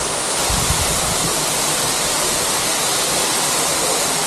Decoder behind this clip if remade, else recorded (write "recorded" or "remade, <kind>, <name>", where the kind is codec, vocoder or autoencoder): recorded